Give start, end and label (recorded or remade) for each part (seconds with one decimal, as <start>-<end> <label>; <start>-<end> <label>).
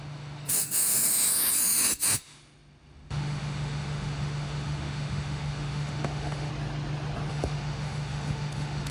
0.0-6.5 remade; 6.5-7.3 recorded; 7.3-8.9 remade